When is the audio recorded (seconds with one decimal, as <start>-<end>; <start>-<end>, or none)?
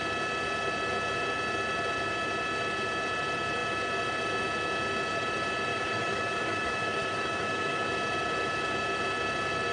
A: 0.0-5.7; 7.9-9.7